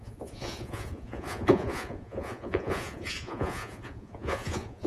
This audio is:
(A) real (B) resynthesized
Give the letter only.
B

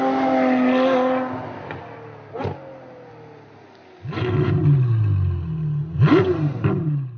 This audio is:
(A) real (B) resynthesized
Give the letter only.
A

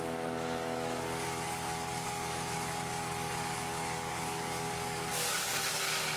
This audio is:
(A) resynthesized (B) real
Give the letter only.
A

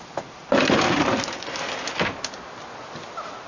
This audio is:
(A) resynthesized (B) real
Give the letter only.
B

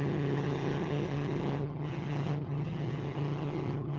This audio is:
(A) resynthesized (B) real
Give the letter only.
A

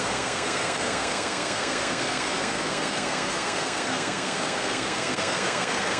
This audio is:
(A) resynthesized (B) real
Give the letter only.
A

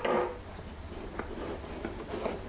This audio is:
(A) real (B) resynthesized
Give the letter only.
A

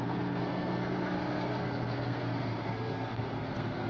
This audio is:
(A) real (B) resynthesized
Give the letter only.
B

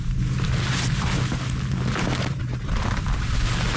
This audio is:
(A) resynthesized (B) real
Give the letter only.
B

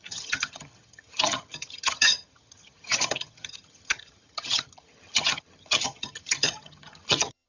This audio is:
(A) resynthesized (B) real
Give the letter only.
A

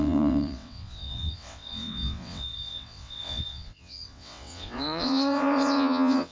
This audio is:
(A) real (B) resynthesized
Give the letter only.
B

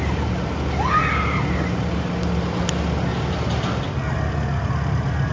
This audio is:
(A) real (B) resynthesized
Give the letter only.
A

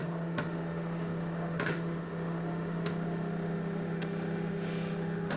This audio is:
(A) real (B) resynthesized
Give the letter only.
B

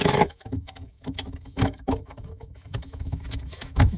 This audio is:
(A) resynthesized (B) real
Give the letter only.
A